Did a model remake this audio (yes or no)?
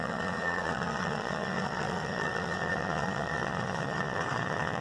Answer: yes